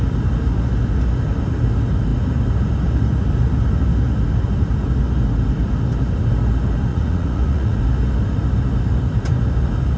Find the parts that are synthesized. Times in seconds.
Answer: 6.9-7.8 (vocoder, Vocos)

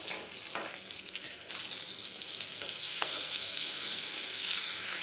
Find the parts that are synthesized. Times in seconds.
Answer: 0.7-1.5 (codec, SNAC); 1.9-5.0

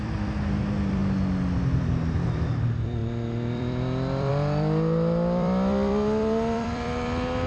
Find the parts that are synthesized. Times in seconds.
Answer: 0.0-1.0 (vocoder, BigVGAN v2); 1.6-7.5

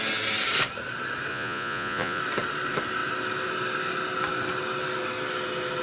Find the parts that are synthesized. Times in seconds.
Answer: 1.3-2.2 (vocoder, Vocos)

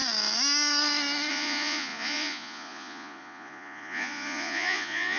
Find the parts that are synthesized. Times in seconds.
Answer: 1.3-5.2 (vocoder, Vocos)

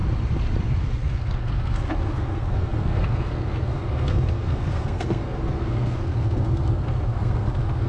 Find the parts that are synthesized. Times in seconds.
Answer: 0.8-7.9 (codec, SNAC)

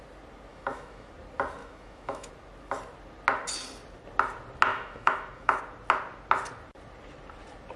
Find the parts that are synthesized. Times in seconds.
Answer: 0.5-1.1 (autoencoder, DAC-VAE); 1.6-2.3; 4.7-5.6